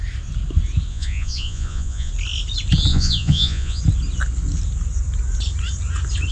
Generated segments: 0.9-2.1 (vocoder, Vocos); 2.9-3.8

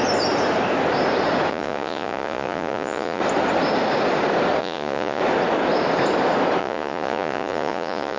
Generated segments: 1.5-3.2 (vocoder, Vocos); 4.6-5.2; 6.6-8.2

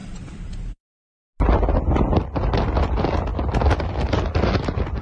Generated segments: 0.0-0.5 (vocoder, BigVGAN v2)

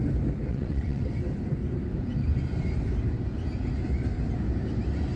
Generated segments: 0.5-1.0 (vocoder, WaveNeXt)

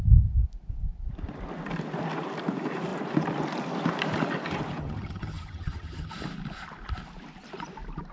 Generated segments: 4.8-6.1 (vocoder, HiFi-GAN)

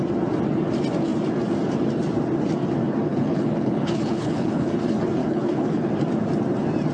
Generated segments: 3.1-4.8 (codec, HILCodec); 5.2-5.9